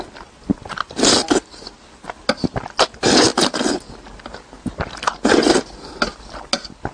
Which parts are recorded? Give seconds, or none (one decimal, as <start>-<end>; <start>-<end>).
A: 0.0-6.9